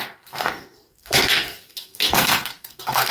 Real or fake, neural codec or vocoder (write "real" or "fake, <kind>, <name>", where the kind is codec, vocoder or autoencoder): fake, codec, SNAC